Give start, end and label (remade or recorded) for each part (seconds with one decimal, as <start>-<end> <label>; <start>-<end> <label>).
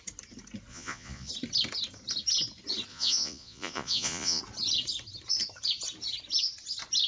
0.0-0.7 recorded; 0.7-1.3 remade; 1.3-2.9 recorded; 2.9-4.4 remade; 4.4-7.1 recorded